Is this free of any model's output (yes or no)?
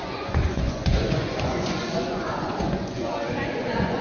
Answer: no